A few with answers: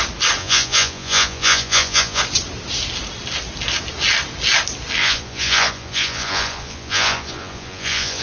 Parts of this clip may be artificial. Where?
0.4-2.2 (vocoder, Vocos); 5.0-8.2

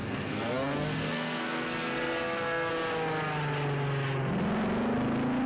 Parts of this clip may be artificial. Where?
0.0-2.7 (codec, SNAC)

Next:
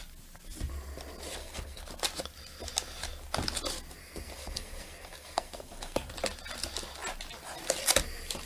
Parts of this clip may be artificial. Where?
1.4-1.9 (codec, SNAC); 4.0-6.1

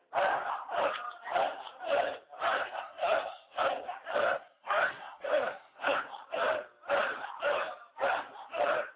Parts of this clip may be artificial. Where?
2.6-3.6 (codec, SNAC); 4.2-6.0